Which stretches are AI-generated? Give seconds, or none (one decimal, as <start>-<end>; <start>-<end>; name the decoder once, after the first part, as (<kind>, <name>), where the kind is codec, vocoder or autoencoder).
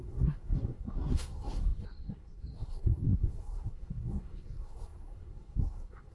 0.0-6.1 (codec, SNAC)